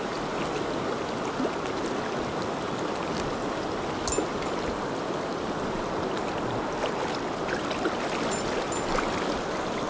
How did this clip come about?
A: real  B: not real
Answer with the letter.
A